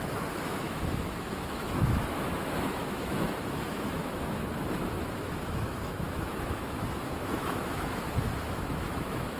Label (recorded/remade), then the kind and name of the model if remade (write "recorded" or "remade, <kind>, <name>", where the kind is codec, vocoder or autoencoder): remade, autoencoder, DAC-VAE